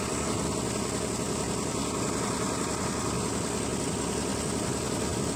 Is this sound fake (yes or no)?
no